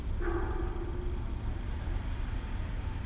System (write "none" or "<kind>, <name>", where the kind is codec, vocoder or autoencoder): none